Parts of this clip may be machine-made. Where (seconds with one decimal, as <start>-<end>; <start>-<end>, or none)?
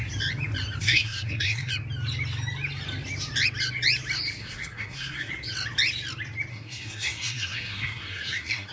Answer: 0.8-1.7; 4.4-5.3; 6.5-8.7